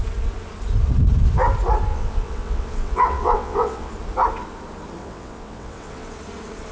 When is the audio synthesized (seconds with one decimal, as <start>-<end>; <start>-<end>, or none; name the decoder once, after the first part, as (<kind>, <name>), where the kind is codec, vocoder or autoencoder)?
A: 1.9-3.9 (vocoder, WaveNeXt); 5.0-6.1